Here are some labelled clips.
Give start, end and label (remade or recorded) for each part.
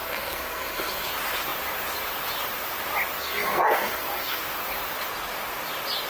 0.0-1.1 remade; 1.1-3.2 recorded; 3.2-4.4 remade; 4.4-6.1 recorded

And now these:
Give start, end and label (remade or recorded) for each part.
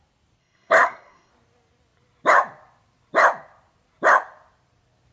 0.0-0.4 recorded; 0.4-1.3 remade; 1.3-5.1 recorded